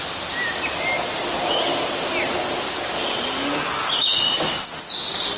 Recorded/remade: recorded